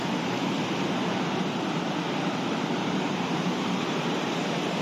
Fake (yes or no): yes